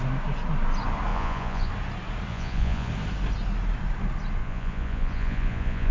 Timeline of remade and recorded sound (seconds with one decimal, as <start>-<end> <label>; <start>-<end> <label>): 0.0-1.1 recorded; 1.1-1.7 remade; 1.7-2.3 recorded; 2.3-2.9 remade; 2.9-4.4 recorded; 4.4-5.9 remade